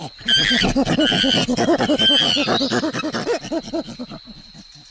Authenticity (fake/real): real